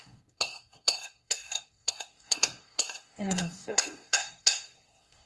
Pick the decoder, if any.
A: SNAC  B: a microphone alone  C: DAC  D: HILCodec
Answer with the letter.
A